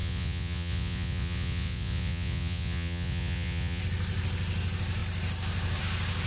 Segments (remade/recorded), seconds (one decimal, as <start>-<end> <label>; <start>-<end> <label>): 0.0-3.8 remade; 3.8-6.3 recorded